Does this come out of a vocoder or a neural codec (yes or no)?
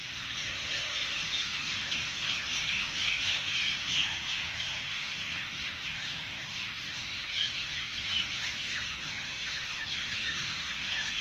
yes